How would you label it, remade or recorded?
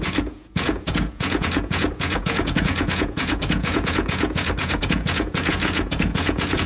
remade